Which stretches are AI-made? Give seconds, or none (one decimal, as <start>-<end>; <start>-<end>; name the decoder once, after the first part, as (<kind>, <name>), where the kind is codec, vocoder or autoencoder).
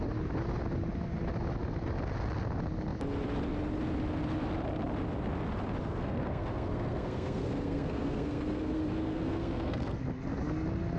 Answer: 5.8-10.0 (codec, SNAC)